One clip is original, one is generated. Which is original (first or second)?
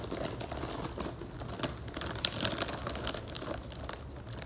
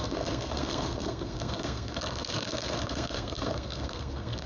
first